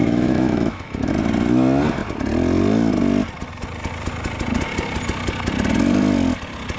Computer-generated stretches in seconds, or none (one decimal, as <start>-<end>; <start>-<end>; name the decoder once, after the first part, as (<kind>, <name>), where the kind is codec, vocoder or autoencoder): 0.0-1.1 (autoencoder, DAC-VAE)